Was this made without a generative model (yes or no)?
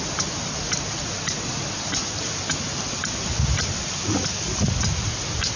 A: yes